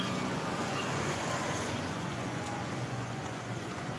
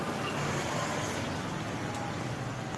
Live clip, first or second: second